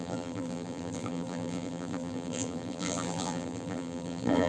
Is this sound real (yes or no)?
no